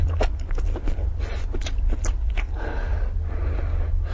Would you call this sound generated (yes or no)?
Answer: no